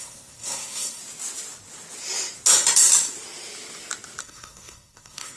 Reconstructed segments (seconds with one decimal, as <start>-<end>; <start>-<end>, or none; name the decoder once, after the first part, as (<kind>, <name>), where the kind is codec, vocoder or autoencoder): 0.0-1.0 (codec, SNAC); 4.2-5.4